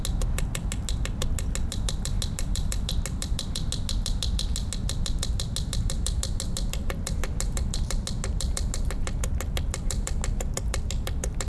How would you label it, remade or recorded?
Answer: recorded